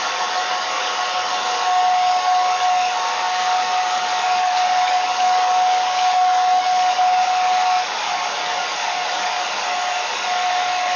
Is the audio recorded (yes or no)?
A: no